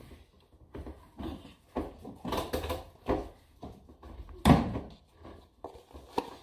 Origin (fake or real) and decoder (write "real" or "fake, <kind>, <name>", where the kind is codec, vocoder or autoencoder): real